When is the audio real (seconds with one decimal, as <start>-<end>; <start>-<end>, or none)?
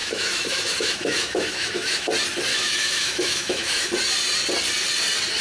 2.1-2.5; 3.9-5.4